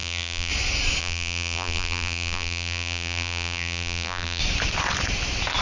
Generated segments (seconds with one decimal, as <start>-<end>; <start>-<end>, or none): 0.0-0.5; 1.0-4.4

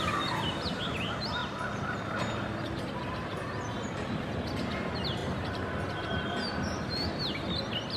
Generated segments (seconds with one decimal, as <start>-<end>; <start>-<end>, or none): 3.3-4.2; 5.2-5.8

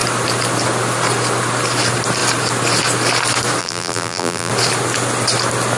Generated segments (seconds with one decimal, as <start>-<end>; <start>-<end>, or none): 3.6-4.5

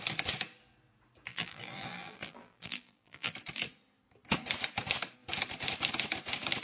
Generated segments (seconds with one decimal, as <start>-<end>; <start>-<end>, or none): 1.3-3.3

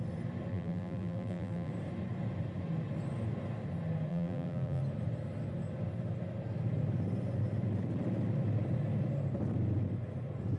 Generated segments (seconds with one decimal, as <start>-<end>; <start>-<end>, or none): 0.5-1.7; 4.1-4.8

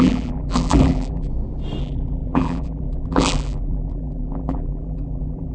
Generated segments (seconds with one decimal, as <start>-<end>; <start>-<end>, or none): 0.0-1.3; 1.8-5.5

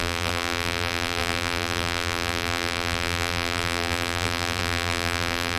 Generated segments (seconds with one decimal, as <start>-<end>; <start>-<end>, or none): 0.0-5.6

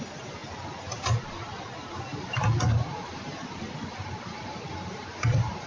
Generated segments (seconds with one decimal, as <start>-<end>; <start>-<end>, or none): 2.1-5.7